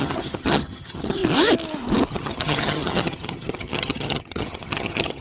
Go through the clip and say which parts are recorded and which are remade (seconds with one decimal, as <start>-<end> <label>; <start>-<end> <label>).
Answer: 0.0-1.2 remade; 1.2-2.1 recorded; 2.1-5.2 remade